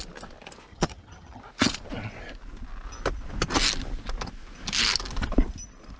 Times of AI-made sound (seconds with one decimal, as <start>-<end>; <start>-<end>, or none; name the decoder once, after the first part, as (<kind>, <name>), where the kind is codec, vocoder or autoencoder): 0.7-1.4 (vocoder, HiFi-GAN)